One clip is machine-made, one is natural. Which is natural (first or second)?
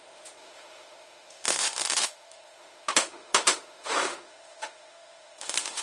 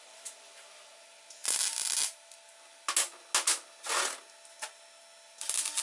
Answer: second